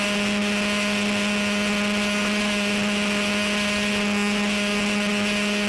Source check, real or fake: real